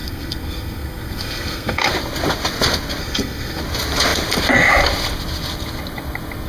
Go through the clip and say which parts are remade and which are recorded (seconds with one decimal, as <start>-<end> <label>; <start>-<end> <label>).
0.0-1.9 remade; 1.9-3.0 recorded; 3.0-3.6 remade; 3.6-6.5 recorded